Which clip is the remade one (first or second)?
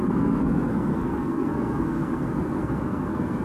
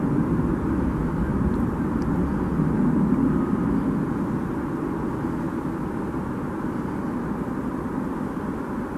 first